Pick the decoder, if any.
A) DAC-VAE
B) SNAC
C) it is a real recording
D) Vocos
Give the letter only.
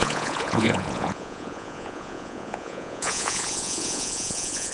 D